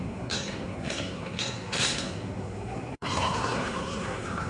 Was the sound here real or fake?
fake